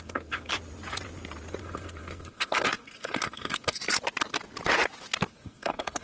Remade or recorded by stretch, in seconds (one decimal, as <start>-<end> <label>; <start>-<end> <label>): 0.0-0.5 remade; 0.5-1.6 recorded; 1.6-3.8 remade; 3.8-5.3 recorded; 5.3-6.0 remade